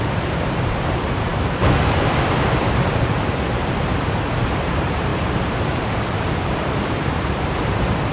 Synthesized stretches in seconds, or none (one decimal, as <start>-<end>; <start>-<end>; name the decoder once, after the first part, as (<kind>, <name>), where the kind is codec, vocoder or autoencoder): 0.0-8.1 (vocoder, BigVGAN v2)